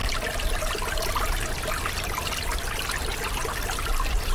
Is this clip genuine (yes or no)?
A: yes